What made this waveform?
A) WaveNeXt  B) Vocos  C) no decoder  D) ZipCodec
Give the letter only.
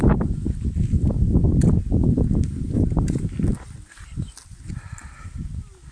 C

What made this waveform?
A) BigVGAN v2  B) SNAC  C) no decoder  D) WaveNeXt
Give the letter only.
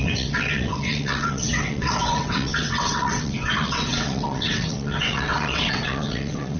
D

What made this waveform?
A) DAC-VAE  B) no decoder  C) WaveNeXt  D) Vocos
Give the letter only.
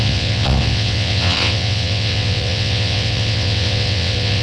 C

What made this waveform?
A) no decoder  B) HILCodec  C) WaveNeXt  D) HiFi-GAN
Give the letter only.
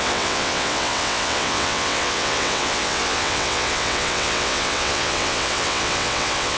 C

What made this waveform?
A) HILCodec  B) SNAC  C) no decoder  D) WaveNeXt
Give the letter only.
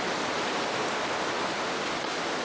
C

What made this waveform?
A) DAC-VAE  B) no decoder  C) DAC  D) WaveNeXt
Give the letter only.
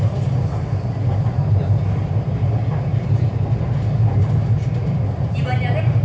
B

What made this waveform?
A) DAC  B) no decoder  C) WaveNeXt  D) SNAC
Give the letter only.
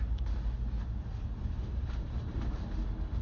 B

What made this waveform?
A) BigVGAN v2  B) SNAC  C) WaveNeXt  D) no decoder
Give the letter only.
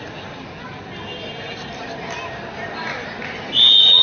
D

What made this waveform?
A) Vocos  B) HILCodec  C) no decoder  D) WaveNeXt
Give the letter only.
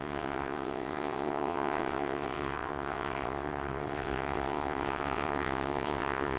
D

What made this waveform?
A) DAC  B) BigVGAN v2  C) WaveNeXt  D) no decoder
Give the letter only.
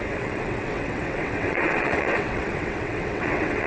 C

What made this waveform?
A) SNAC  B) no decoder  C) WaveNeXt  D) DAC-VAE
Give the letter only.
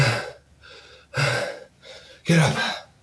B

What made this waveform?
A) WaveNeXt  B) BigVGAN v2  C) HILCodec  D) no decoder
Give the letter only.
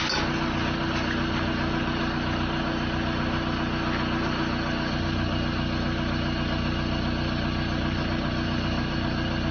D